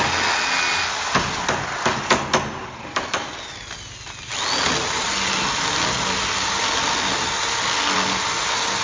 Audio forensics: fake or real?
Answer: real